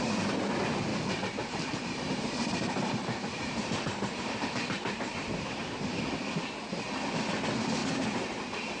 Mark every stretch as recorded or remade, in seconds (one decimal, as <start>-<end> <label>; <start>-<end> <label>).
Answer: 0.0-0.9 recorded; 0.9-5.8 remade; 5.8-7.8 recorded; 7.8-8.8 remade